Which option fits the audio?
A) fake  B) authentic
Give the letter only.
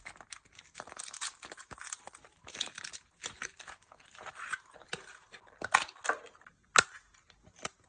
B